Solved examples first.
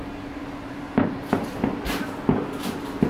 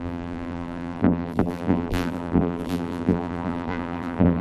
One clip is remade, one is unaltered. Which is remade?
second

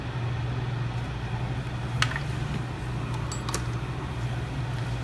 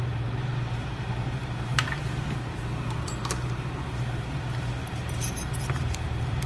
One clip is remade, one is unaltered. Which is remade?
second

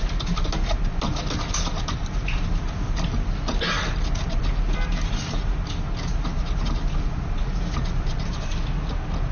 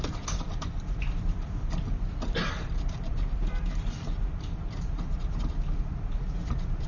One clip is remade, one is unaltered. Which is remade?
second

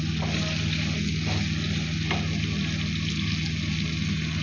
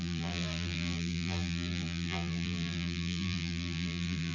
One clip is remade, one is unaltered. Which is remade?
second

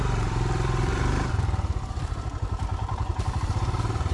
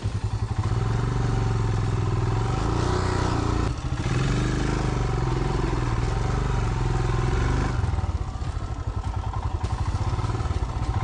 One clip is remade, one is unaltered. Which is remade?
first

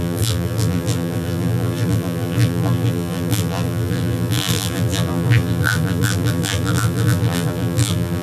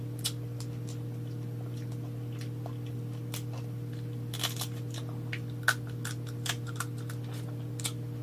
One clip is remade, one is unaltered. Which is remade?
first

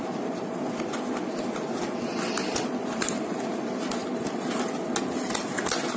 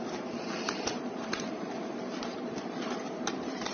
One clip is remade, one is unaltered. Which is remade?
second